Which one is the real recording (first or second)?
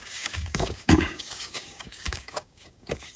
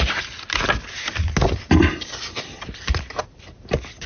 second